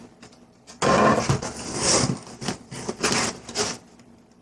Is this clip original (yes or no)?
yes